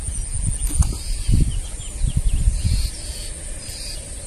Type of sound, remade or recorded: recorded